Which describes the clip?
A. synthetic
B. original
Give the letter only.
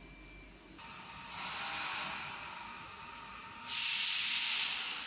B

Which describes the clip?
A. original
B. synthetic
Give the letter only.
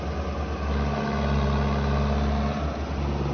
A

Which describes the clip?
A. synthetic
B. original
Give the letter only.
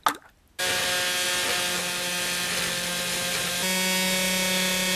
B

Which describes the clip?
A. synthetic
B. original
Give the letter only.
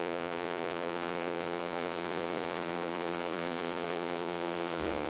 A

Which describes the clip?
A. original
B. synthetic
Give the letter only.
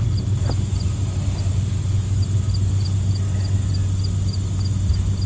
A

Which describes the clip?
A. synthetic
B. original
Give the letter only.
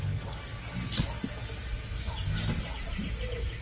B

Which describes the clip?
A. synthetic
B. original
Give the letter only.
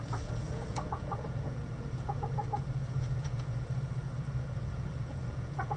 A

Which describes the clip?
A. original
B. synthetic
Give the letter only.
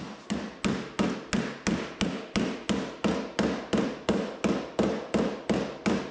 A